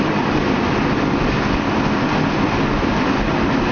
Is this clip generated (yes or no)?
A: no